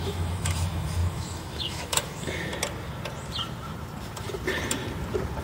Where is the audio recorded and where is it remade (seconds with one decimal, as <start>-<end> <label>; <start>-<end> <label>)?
0.0-2.5 remade; 2.5-5.4 recorded

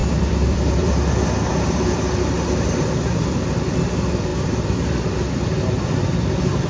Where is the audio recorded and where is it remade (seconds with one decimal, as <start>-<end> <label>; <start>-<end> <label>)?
0.0-0.9 remade; 0.9-4.3 recorded; 4.3-5.0 remade; 5.0-6.7 recorded

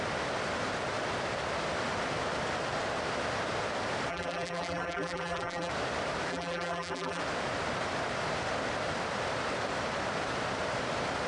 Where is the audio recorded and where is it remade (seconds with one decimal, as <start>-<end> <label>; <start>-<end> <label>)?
0.0-4.1 recorded; 4.1-5.7 remade; 5.7-6.3 recorded; 6.3-7.2 remade; 7.2-11.3 recorded

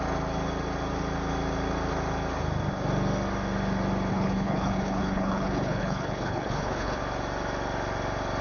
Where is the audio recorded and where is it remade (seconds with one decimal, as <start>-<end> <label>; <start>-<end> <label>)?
0.0-4.1 recorded; 4.1-7.0 remade; 7.0-8.4 recorded